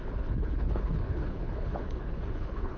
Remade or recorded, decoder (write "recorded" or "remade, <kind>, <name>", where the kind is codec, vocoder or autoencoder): remade, codec, HILCodec